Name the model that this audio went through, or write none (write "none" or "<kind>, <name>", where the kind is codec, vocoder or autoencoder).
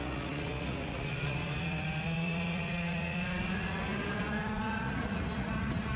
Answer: vocoder, Vocos